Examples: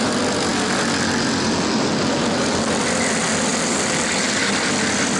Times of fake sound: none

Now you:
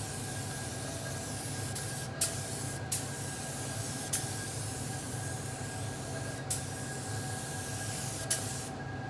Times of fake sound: 4.5-5.6 (vocoder, BigVGAN v2)

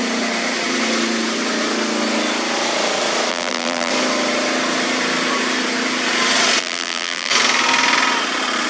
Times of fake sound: 3.3-3.9 (vocoder, BigVGAN v2); 6.6-7.3

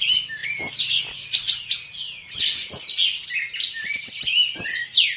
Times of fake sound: 0.4-1.0 (vocoder, BigVGAN v2)